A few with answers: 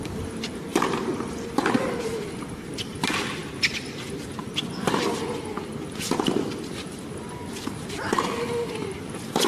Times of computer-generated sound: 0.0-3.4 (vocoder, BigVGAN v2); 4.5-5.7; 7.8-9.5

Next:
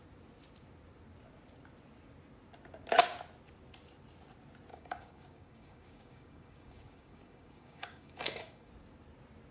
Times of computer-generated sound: 4.7-8.7 (codec, DAC)

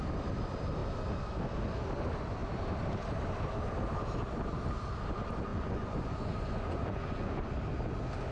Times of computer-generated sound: 5.5-7.5 (vocoder, Vocos)

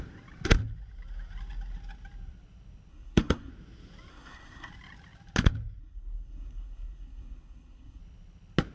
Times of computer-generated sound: 2.9-3.5 (codec, SNAC); 4.1-4.7; 5.8-8.0

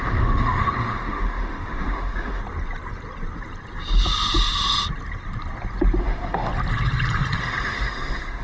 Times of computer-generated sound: 0.0-2.4 (autoencoder, DAC-VAE); 6.0-6.5; 7.4-8.4

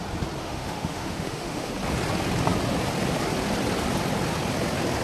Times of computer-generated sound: 0.4-1.7 (autoencoder, DAC-VAE)

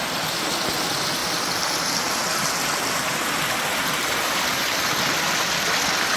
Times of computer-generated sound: none